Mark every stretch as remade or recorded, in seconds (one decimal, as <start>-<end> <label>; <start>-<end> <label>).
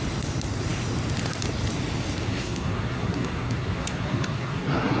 0.0-2.3 recorded; 2.3-5.0 remade